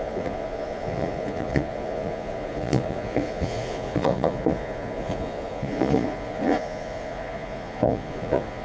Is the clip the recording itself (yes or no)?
no